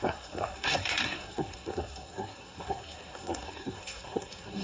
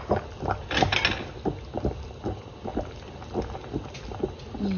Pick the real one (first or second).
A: second